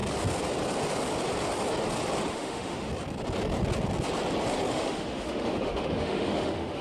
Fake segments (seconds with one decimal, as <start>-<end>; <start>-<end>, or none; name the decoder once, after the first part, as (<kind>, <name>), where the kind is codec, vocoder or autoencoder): 2.3-2.9 (autoencoder, DAC-VAE); 4.7-6.8